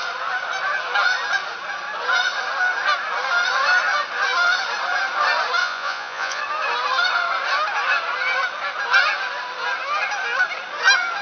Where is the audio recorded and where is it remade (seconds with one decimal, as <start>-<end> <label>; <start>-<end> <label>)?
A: 0.0-5.6 recorded; 5.6-6.4 remade; 6.4-11.2 recorded